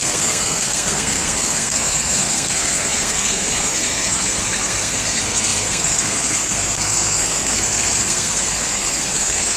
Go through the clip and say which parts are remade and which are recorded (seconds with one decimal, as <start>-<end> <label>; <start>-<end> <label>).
0.0-9.6 remade